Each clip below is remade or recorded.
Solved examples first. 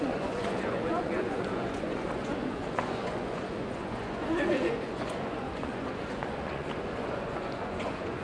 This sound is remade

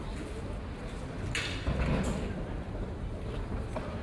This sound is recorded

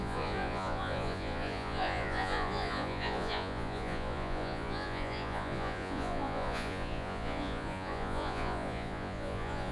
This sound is remade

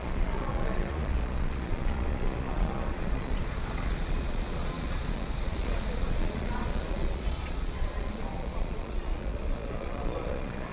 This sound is remade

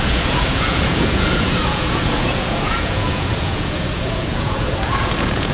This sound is remade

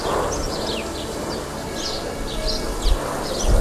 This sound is recorded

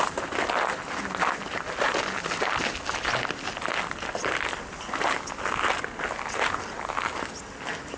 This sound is recorded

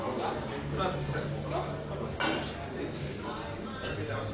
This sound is recorded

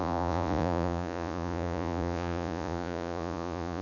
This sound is remade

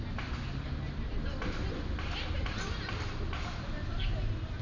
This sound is recorded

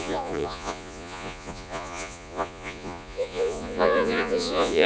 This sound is remade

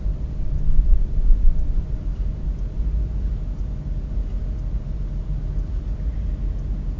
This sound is recorded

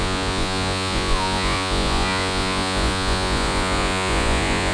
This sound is remade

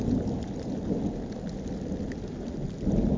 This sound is recorded